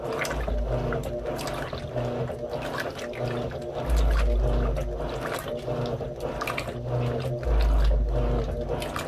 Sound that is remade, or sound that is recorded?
recorded